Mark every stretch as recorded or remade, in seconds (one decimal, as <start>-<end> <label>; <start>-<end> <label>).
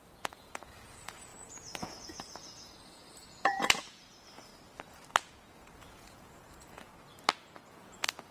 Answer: 0.0-4.5 remade; 4.5-5.2 recorded; 5.2-6.9 remade; 6.9-7.7 recorded; 7.7-8.3 remade